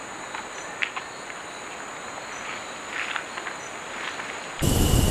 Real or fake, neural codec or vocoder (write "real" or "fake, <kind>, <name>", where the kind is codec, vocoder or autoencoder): real